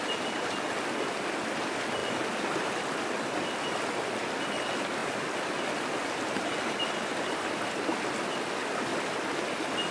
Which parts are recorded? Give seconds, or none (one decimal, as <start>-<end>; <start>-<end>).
0.0-5.0; 7.7-8.9; 9.5-9.9